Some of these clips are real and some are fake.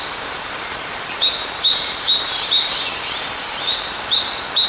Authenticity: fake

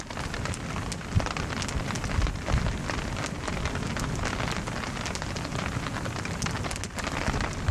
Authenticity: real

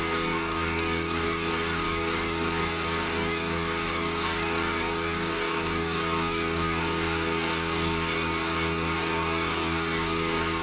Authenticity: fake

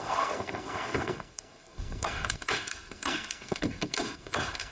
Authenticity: fake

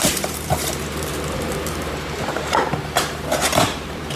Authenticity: fake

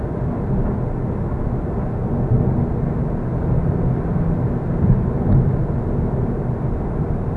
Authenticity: real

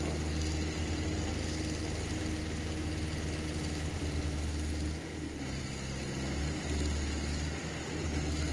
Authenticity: real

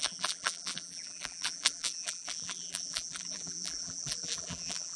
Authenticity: fake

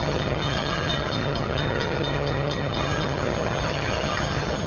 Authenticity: fake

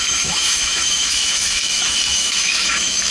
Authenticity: fake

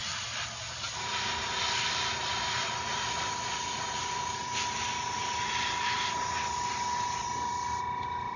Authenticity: fake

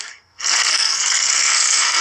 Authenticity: fake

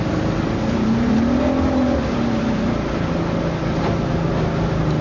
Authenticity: real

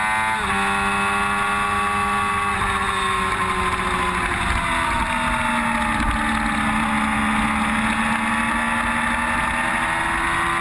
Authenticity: real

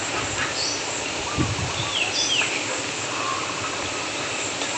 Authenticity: real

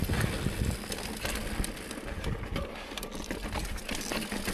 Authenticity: real